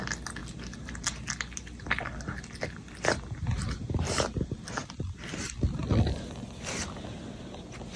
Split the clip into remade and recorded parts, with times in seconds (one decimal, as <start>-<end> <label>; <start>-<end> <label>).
0.0-8.0 recorded